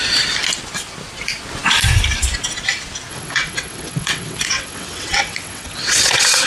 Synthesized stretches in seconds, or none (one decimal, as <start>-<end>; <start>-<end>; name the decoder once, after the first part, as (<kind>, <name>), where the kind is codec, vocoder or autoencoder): 3.1-6.5 (vocoder, WaveNeXt)